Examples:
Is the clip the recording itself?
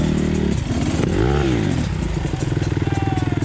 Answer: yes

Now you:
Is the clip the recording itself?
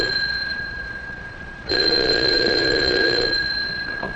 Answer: no